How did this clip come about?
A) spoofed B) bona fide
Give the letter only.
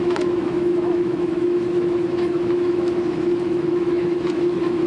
A